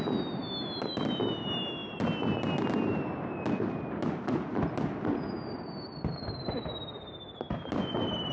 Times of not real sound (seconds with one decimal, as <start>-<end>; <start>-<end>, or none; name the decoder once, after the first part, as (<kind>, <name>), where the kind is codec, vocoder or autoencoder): none

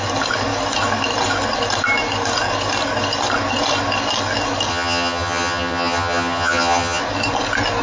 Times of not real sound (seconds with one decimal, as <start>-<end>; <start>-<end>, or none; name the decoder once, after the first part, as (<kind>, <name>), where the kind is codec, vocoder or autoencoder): 4.7-7.0 (vocoder, HiFi-GAN)

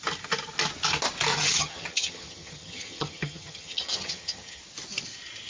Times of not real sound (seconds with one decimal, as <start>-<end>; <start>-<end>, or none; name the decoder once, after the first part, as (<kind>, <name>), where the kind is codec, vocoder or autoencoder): 1.3-4.6 (vocoder, HiFi-GAN)

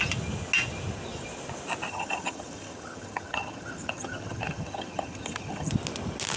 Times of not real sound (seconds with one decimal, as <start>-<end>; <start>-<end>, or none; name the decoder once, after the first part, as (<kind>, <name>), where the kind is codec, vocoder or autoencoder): 1.9-5.7 (vocoder, HiFi-GAN)

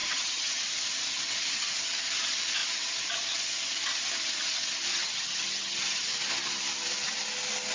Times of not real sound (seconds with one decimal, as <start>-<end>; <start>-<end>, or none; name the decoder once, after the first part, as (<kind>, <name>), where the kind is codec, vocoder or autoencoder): 0.0-0.6 (vocoder, HiFi-GAN); 4.9-6.0

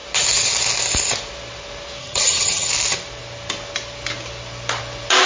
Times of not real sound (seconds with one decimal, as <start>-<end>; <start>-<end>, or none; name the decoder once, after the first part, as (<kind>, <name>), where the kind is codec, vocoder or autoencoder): 2.0-2.7 (vocoder, HiFi-GAN)